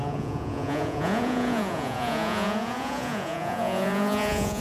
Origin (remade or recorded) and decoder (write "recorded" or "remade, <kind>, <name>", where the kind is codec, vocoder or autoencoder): remade, vocoder, Vocos